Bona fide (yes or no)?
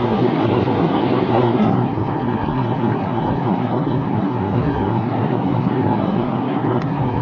no